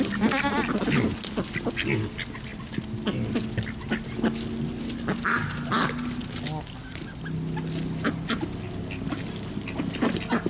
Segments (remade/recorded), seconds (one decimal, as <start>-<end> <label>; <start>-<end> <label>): 0.0-0.7 recorded; 0.7-1.7 remade; 1.7-10.5 recorded